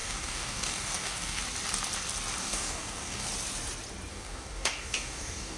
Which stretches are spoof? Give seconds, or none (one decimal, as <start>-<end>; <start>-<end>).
0.0-1.4; 2.4-3.3; 4.1-5.6